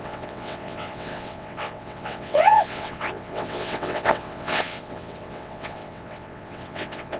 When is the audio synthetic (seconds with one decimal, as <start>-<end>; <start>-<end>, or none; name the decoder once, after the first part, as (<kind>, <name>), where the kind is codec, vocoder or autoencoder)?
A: 0.0-7.2 (vocoder, WaveNeXt)